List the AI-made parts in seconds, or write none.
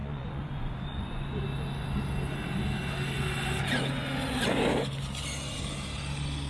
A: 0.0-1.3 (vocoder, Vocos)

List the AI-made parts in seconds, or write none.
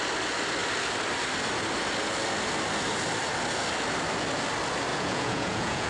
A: 4.9-5.9 (vocoder, Vocos)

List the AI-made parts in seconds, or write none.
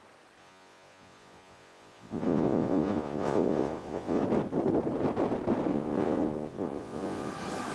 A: 0.4-4.2 (vocoder, Vocos); 5.7-7.3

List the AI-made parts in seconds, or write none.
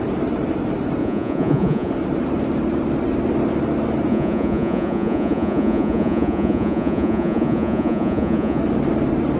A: 1.0-1.9 (vocoder, Vocos); 4.1-8.6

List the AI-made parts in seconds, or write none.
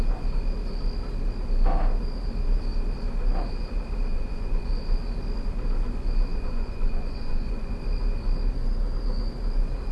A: 4.1-4.7 (vocoder, Vocos); 6.3-7.7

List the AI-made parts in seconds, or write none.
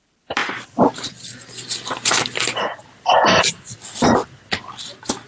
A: none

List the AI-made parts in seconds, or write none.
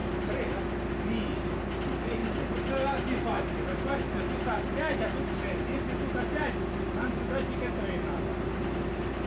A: none